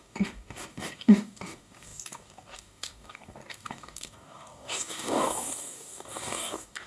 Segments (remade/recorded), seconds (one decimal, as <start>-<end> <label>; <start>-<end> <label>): 0.0-6.9 remade